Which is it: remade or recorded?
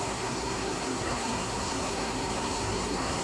remade